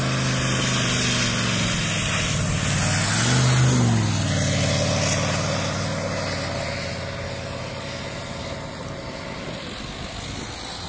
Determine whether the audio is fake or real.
real